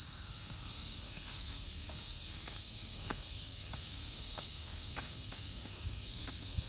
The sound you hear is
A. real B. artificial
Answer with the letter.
B